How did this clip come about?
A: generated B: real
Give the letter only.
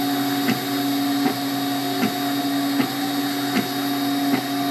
B